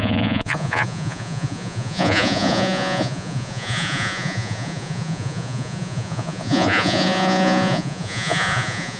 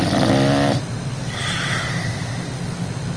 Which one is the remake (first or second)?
first